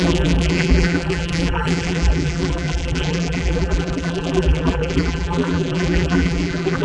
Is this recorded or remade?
remade